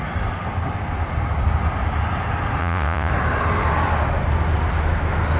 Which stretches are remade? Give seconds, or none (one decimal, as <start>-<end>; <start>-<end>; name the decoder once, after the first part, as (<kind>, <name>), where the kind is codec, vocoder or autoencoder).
2.6-3.1 (vocoder, Vocos)